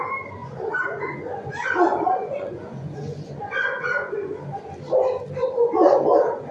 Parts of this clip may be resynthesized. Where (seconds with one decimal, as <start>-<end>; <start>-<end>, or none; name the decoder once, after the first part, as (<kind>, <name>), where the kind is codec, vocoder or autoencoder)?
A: 0.4-4.3 (vocoder, Vocos)